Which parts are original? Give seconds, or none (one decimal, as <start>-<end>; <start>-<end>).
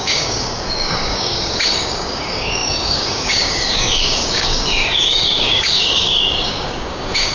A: none